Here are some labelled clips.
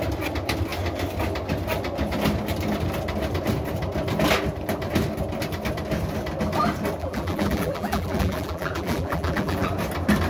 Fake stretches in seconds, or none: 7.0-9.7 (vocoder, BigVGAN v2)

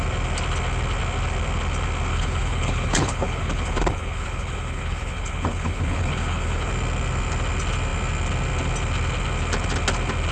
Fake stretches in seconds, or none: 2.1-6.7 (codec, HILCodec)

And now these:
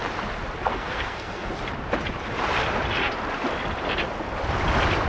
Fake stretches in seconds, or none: 0.7-1.5 (codec, SNAC)